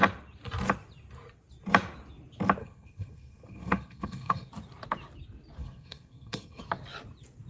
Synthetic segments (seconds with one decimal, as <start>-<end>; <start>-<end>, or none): 2.6-4.5; 5.6-6.6